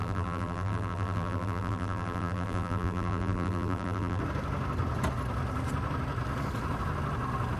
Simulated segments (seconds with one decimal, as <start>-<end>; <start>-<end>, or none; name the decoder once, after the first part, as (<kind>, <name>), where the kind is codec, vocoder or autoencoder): 0.0-4.2 (vocoder, BigVGAN v2)